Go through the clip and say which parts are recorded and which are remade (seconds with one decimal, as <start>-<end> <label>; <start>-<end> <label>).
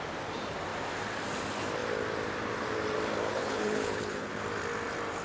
0.0-3.3 recorded; 3.3-4.4 remade; 4.4-5.2 recorded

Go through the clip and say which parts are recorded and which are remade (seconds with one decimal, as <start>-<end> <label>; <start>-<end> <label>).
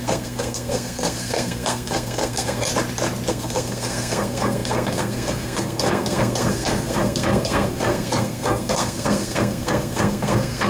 0.0-2.7 remade; 2.7-3.3 recorded; 3.3-10.7 remade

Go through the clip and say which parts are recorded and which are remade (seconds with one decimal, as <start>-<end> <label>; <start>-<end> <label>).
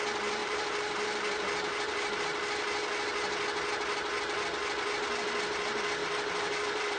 0.0-0.4 recorded; 0.4-2.2 remade; 2.2-6.0 recorded; 6.0-7.0 remade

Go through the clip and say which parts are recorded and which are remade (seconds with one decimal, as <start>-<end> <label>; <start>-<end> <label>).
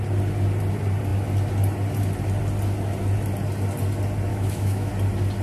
0.0-4.3 recorded; 4.3-4.9 remade; 4.9-5.4 recorded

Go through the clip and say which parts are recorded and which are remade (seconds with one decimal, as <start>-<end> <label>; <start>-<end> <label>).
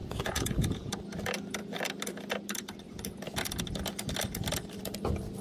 0.0-0.9 remade; 0.9-5.4 recorded